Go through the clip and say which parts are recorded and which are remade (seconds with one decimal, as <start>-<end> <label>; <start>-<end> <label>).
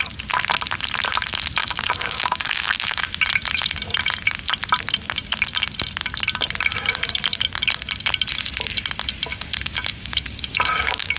0.0-1.6 recorded; 1.6-3.0 remade; 3.0-9.3 recorded; 9.3-11.2 remade